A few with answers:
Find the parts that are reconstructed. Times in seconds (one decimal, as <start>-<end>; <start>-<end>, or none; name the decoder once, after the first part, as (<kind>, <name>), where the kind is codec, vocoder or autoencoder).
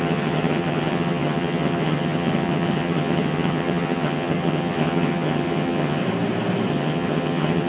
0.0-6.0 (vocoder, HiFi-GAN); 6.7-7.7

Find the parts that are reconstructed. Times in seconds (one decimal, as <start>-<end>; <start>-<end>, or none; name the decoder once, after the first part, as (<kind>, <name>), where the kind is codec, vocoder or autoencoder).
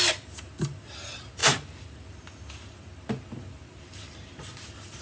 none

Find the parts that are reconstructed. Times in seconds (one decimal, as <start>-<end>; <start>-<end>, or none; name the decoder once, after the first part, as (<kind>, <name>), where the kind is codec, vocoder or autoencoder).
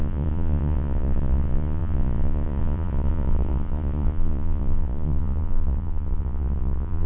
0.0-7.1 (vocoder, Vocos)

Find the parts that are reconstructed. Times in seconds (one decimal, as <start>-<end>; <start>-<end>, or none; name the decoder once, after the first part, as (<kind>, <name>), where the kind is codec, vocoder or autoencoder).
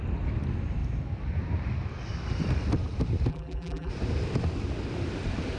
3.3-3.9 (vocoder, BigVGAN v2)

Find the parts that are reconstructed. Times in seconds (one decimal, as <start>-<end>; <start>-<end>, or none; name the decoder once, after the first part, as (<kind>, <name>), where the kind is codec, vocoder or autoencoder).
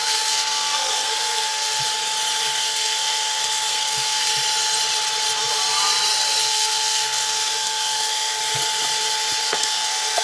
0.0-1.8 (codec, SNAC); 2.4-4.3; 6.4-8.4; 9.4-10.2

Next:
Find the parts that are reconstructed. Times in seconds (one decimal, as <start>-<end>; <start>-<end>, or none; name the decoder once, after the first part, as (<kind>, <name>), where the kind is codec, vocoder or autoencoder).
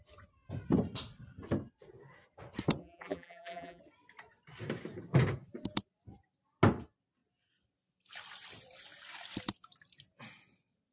2.8-3.8 (vocoder, BigVGAN v2)